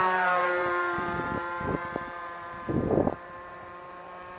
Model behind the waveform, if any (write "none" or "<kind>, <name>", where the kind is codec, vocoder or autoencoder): vocoder, BigVGAN v2